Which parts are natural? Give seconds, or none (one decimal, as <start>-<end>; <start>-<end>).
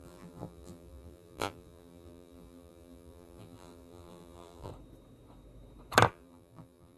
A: 4.7-6.1